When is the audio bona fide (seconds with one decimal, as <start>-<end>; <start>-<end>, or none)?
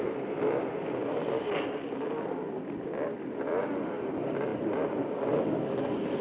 0.0-1.0; 2.8-4.5; 5.5-6.2